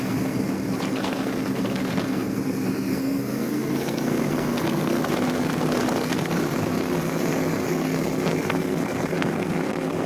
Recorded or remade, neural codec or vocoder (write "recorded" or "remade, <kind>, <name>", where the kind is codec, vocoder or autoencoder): remade, codec, SNAC